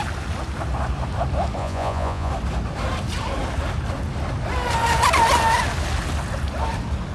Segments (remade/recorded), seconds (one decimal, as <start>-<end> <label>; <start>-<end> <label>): 0.0-1.6 recorded; 1.6-2.3 remade; 2.3-7.1 recorded